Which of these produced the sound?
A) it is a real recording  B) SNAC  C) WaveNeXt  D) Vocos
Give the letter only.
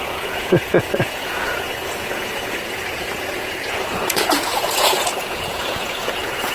D